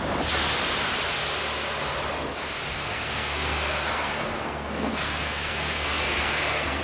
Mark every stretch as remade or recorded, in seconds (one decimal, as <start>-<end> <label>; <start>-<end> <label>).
0.0-2.7 recorded; 2.7-6.8 remade